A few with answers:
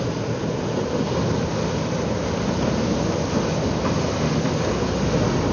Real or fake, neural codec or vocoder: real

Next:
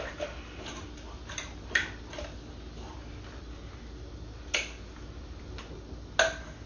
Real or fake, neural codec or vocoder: real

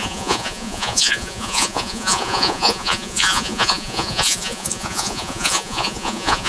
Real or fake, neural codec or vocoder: fake, vocoder, Vocos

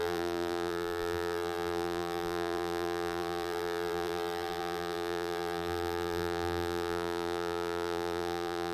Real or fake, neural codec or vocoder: fake, vocoder, BigVGAN v2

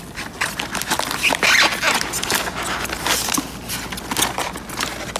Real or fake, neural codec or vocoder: real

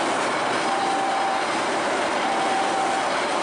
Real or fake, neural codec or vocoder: fake, vocoder, BigVGAN v2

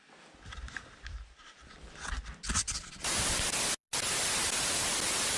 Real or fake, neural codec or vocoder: real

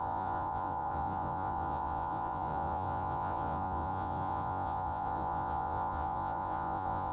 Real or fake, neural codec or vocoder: fake, vocoder, Vocos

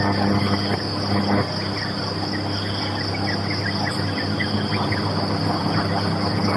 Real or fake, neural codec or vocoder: real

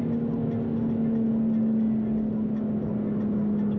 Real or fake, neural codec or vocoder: real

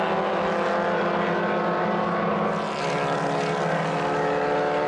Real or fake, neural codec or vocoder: real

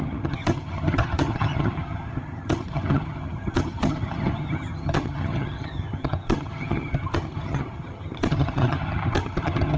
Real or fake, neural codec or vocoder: fake, vocoder, HiFi-GAN